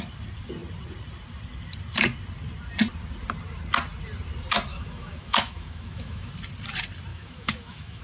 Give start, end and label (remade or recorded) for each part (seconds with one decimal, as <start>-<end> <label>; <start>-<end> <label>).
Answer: 0.0-4.7 recorded; 4.7-6.3 remade; 6.3-7.1 recorded; 7.1-8.0 remade